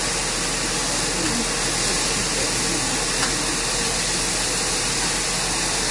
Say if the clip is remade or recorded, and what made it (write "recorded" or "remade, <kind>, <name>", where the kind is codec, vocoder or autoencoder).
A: recorded